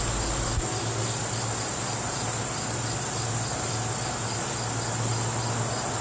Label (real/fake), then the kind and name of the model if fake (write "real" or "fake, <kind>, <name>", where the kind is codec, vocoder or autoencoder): real